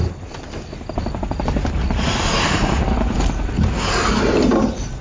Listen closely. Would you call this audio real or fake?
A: real